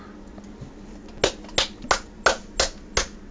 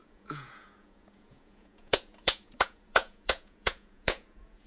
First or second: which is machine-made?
second